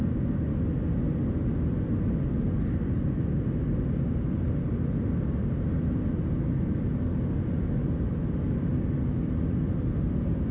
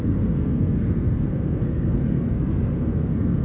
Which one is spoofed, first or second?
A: second